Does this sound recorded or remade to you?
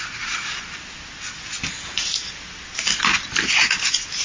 recorded